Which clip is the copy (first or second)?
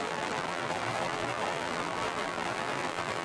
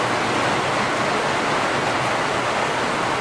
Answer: first